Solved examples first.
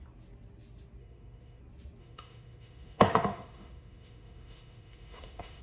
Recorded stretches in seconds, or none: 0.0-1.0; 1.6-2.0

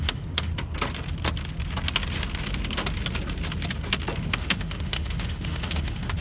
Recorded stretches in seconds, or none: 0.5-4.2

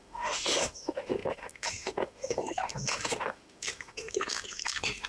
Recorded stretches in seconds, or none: none

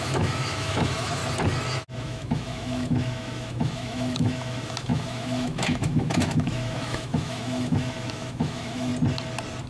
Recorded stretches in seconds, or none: 1.2-2.0; 8.9-9.7

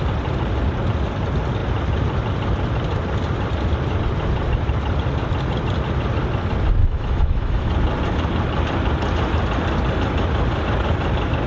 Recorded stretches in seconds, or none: 0.0-6.8; 7.7-11.5